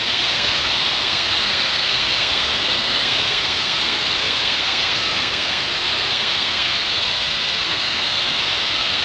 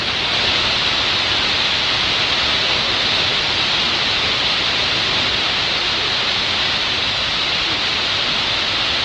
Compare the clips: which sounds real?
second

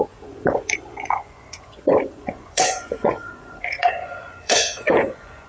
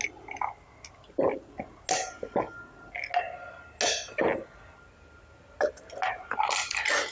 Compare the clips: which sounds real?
second